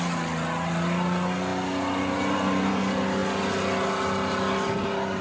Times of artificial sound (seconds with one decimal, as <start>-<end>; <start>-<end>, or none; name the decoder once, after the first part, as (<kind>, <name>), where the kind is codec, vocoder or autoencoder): none